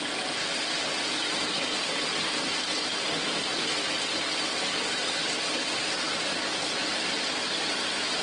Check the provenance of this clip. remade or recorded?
recorded